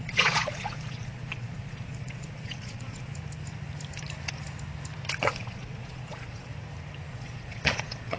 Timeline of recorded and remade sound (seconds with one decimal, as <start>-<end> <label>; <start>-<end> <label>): 0.0-3.1 remade; 3.1-5.2 recorded; 5.2-6.5 remade; 6.5-7.1 recorded; 7.1-8.2 remade